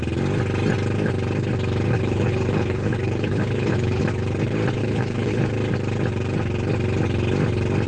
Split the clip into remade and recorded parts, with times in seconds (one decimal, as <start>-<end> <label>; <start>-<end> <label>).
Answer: 0.0-1.9 recorded; 1.9-4.0 remade; 4.0-4.8 recorded; 4.8-5.4 remade; 5.4-7.9 recorded